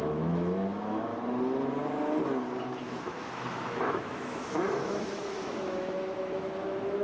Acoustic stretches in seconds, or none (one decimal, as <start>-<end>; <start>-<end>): 1.1-2.6